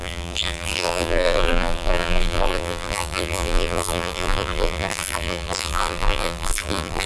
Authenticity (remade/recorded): remade